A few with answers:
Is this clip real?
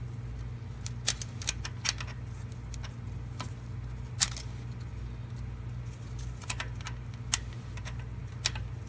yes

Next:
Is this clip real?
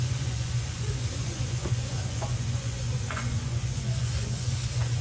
no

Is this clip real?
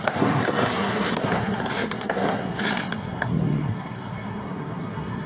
no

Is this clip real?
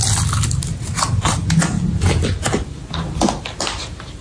yes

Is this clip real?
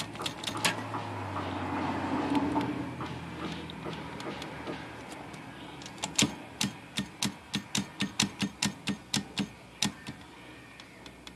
yes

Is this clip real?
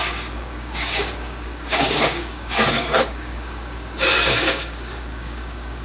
no